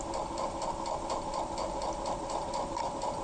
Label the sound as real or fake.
real